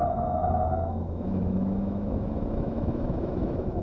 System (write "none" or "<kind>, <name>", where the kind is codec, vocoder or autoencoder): autoencoder, DAC-VAE